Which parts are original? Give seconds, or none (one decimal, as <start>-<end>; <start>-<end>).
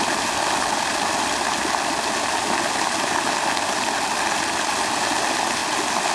0.0-5.6